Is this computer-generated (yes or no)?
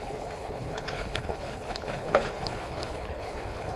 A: yes